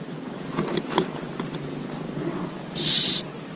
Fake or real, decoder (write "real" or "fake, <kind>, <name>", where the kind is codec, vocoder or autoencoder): real